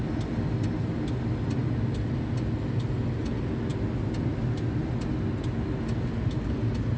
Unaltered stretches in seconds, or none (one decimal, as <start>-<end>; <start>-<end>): 0.0-7.0